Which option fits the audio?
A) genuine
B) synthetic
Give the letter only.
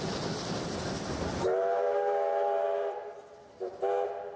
A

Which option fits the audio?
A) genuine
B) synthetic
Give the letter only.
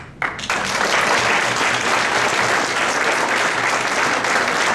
A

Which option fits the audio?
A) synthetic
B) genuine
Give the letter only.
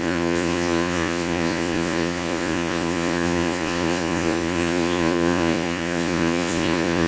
A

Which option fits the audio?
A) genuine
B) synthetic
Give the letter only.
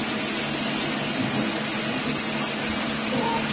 A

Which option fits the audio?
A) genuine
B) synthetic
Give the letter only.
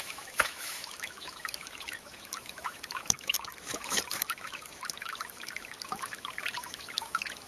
B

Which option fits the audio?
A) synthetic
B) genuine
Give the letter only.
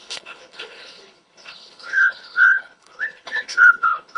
A